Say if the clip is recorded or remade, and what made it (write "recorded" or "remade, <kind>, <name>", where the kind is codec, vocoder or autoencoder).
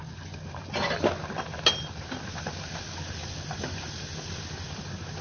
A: recorded